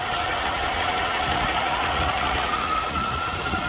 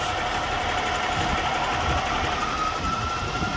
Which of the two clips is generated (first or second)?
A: first